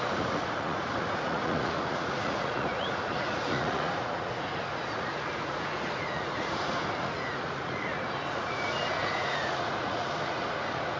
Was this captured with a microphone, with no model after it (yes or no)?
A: no